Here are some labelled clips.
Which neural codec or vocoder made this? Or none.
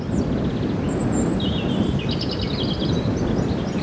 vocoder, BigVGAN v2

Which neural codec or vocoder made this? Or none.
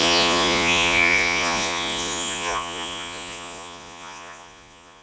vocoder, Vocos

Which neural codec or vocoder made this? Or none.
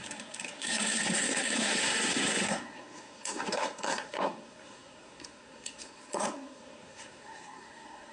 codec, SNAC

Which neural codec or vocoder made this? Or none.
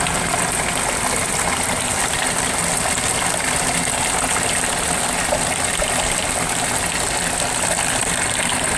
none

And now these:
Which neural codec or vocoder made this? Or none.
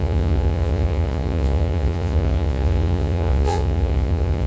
vocoder, Vocos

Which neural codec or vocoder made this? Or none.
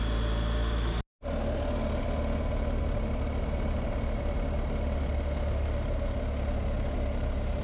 none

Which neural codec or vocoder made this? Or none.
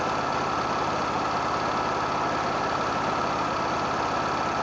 none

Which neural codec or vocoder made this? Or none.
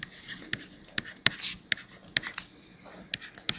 none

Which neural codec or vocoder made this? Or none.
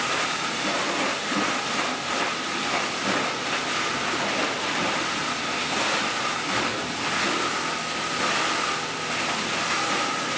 none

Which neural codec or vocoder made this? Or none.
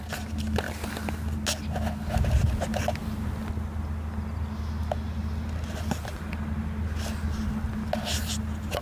none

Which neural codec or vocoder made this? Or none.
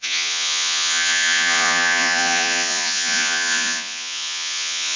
vocoder, Vocos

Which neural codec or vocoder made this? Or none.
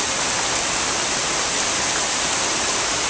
none